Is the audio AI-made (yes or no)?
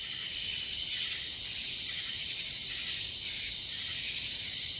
no